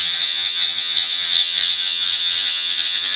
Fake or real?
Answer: fake